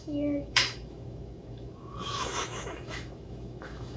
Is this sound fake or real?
fake